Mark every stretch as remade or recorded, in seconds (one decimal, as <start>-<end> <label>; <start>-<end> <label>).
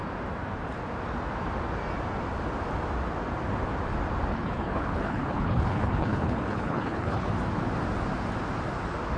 0.0-4.3 recorded; 4.3-7.3 remade; 7.3-9.2 recorded